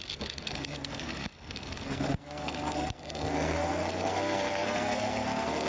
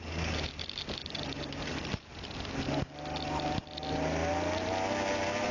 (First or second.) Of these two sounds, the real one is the second